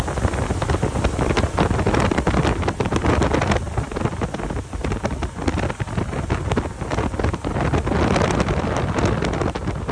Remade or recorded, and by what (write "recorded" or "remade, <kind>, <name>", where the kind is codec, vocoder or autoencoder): recorded